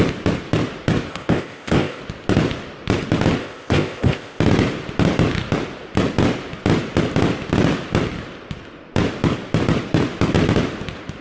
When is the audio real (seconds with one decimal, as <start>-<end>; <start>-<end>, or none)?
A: 0.0-1.1; 2.0-3.4; 4.4-11.2